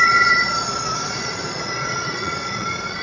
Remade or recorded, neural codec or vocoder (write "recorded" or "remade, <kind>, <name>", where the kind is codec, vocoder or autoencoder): remade, vocoder, Vocos